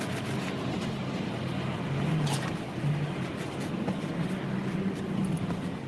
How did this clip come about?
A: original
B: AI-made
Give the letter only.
A